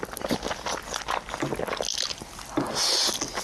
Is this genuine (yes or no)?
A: yes